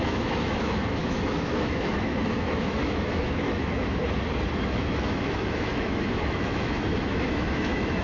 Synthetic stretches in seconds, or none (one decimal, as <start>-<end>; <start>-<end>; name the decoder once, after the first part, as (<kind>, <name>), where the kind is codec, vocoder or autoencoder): 0.0-4.0 (autoencoder, DAC-VAE); 4.5-8.0